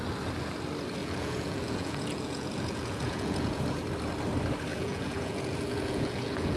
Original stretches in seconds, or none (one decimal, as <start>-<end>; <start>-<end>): 0.0-1.0; 3.6-4.7